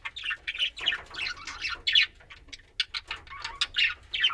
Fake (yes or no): no